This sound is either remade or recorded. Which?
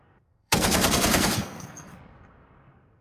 remade